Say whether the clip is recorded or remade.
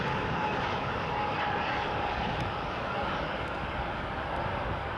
remade